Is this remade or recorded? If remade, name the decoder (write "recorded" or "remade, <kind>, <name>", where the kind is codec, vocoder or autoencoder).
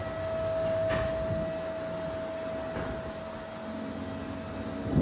recorded